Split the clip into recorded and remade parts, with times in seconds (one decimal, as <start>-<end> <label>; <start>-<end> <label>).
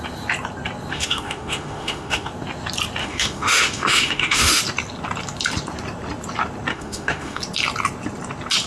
0.0-0.9 recorded; 0.9-2.3 remade; 2.3-3.0 recorded; 3.0-4.6 remade; 4.6-6.7 recorded; 6.7-7.4 remade; 7.4-8.7 recorded